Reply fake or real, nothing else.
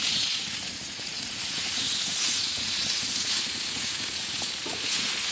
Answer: fake